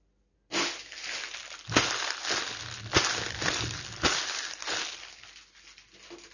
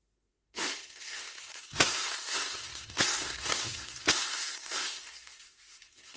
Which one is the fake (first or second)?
second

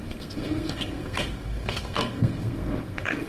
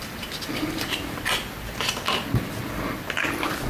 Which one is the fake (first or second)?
first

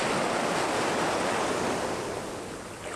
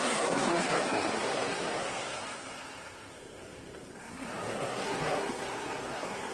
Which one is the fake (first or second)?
second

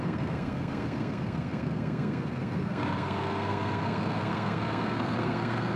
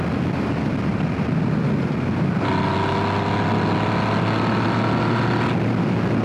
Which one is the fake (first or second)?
first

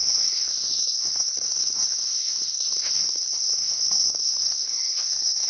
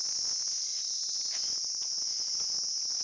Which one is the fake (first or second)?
first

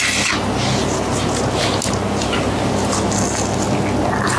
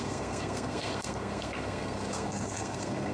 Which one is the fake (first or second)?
second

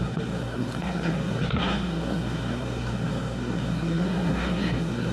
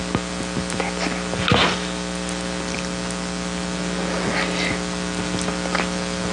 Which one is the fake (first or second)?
first